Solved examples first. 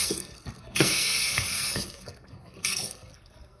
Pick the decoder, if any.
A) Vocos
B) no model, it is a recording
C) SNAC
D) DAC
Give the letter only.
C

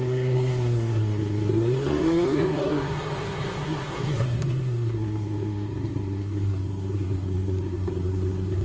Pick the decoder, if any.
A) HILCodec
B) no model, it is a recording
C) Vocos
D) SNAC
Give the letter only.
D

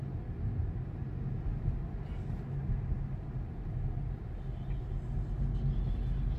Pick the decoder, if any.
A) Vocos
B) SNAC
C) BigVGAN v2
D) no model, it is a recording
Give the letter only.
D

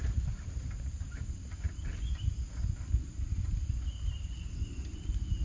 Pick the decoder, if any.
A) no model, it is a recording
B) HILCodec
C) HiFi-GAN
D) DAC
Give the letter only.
A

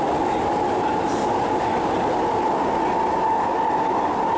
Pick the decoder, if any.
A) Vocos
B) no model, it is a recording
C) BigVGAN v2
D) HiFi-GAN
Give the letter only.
B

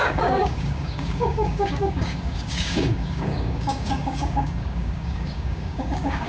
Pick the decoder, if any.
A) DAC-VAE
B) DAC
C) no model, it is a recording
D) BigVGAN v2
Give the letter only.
B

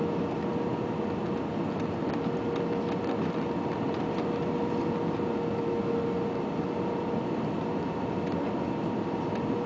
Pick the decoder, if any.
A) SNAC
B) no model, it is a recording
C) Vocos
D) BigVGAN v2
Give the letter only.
B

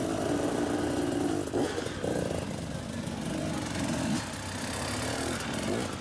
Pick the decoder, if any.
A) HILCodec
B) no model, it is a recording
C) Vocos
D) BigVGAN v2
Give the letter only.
B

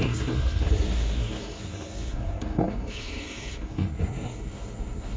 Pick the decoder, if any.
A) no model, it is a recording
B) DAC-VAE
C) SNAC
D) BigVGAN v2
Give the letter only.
C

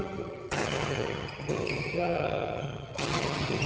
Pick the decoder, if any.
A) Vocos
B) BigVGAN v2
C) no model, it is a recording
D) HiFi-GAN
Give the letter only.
D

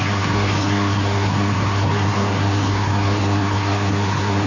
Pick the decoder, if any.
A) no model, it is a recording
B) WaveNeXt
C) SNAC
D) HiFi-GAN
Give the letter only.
C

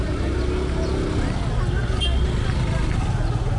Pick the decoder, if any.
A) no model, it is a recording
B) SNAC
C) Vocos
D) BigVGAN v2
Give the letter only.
A